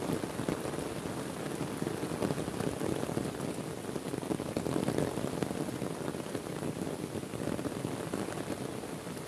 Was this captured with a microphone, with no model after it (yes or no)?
yes